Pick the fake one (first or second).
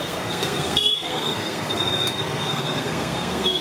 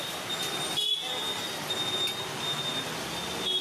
first